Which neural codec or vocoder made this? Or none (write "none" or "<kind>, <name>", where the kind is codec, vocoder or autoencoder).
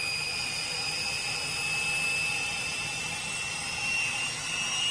none